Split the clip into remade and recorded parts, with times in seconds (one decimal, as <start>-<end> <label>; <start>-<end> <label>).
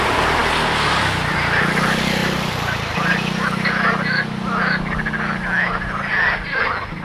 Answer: 0.0-2.2 recorded; 2.2-2.9 remade; 2.9-7.0 recorded